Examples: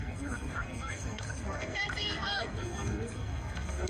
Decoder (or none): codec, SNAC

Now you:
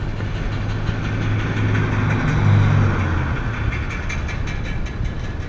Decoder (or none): none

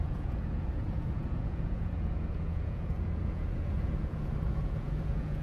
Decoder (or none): vocoder, Vocos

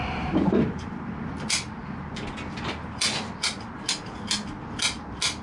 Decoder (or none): none